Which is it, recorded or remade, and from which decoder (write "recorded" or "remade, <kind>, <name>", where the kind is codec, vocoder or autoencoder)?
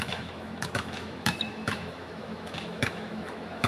remade, autoencoder, DAC-VAE